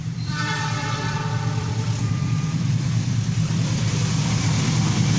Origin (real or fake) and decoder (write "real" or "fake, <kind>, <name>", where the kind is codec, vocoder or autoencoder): fake, vocoder, BigVGAN v2